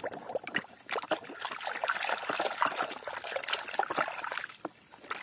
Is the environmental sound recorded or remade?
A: recorded